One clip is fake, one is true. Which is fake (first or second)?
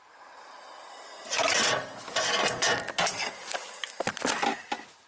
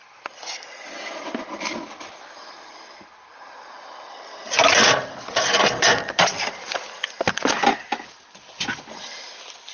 second